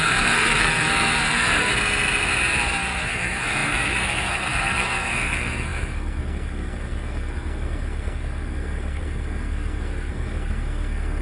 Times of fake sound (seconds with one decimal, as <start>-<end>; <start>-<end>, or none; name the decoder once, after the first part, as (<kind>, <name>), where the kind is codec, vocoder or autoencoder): 0.0-1.7 (codec, SNAC); 2.8-11.2